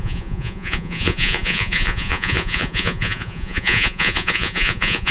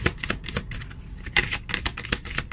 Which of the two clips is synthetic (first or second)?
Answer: first